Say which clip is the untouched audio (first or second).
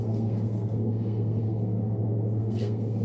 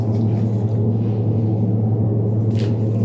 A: second